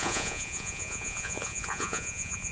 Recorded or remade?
remade